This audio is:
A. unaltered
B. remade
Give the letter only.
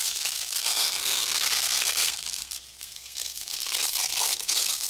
B